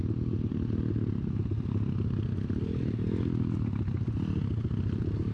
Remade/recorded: recorded